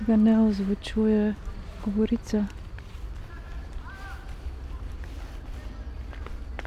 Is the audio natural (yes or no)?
yes